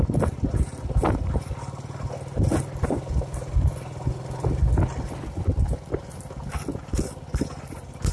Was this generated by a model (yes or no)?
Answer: no